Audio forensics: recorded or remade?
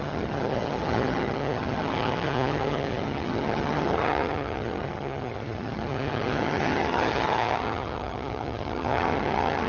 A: remade